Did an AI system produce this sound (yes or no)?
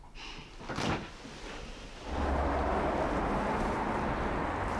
no